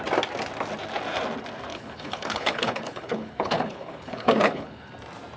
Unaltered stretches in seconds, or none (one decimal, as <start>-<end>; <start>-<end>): 0.0-1.7; 4.9-5.4